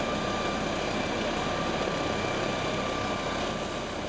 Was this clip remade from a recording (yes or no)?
no